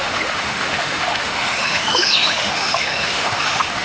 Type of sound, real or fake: fake